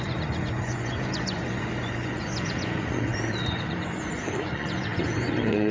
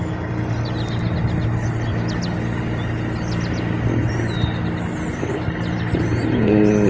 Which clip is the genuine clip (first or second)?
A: second